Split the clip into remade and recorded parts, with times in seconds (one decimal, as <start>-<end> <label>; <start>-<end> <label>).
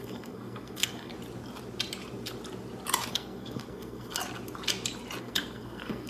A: 0.0-1.1 remade; 1.1-3.1 recorded; 3.1-4.2 remade; 4.2-5.2 recorded; 5.2-6.1 remade